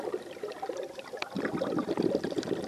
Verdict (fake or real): real